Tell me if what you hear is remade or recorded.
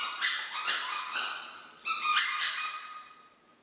recorded